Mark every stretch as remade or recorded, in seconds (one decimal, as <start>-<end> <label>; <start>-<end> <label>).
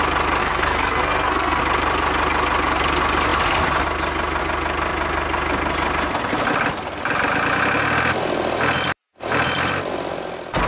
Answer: 0.0-0.4 recorded; 0.4-1.6 remade; 1.6-10.7 recorded